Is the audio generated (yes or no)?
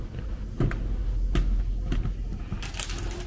no